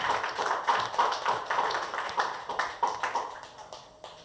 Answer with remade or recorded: recorded